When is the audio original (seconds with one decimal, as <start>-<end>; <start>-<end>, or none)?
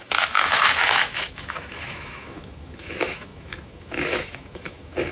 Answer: none